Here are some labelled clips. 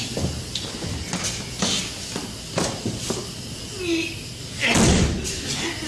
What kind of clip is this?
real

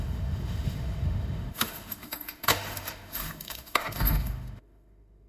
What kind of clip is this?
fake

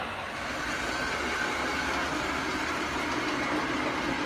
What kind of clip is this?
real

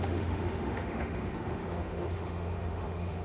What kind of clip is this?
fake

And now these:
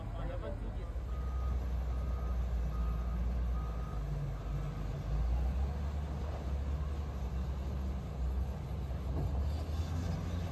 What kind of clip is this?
real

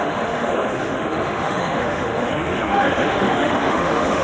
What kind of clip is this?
fake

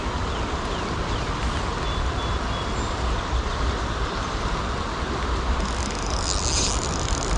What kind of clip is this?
real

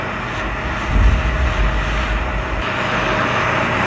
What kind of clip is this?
real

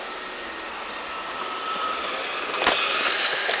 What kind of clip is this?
real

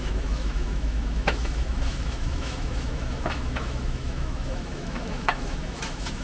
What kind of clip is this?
fake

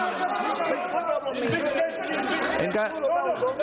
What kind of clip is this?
real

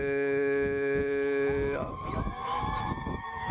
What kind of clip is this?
fake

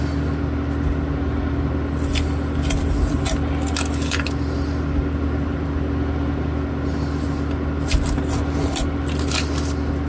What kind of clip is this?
real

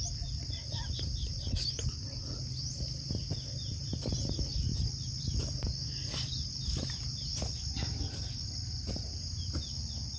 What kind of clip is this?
real